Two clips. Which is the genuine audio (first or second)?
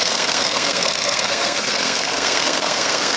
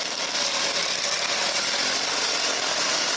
second